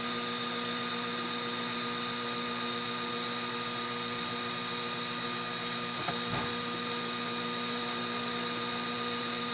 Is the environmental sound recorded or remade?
recorded